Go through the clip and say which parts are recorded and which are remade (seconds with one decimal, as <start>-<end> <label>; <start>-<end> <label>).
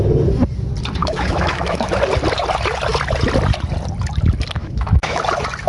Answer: 0.0-1.0 recorded; 1.0-2.0 remade; 2.0-4.6 recorded; 4.6-5.2 remade; 5.2-5.7 recorded